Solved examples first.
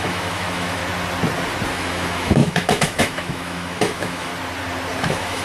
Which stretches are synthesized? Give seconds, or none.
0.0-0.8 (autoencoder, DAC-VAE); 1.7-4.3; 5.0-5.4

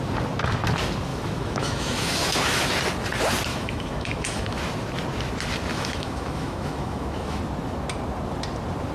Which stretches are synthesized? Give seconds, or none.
1.1-2.7 (autoencoder, DAC-VAE); 3.5-4.6; 5.7-7.4

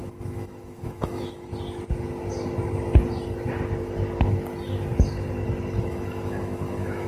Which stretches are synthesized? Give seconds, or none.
0.0-1.5 (autoencoder, DAC-VAE); 5.8-7.1

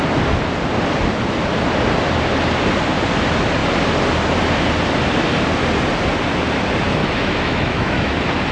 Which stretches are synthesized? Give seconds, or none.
7.0-8.1 (autoencoder, DAC-VAE)

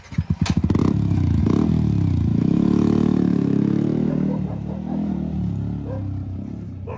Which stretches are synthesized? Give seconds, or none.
0.8-1.4 (autoencoder, DAC-VAE); 2.3-4.1